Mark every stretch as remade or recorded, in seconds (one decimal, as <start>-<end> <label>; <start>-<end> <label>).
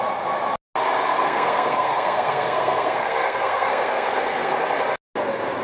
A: 0.0-1.1 recorded; 1.1-4.5 remade; 4.5-5.6 recorded